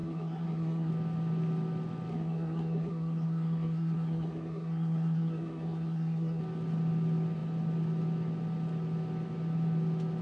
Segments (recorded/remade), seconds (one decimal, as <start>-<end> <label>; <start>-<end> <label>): 0.0-0.9 remade; 0.9-2.1 recorded; 2.1-6.4 remade; 6.4-10.2 recorded

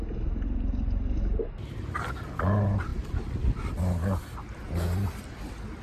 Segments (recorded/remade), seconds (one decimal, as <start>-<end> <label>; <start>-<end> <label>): 0.0-5.8 recorded

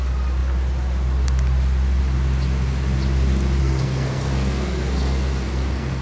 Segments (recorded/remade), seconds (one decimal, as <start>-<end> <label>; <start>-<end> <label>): 0.0-3.6 recorded; 3.6-6.0 remade